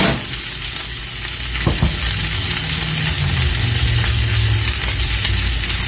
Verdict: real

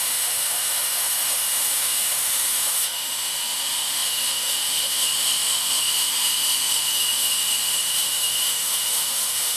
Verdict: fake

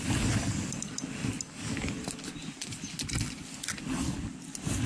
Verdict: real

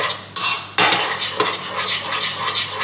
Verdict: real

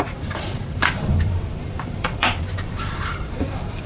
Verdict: fake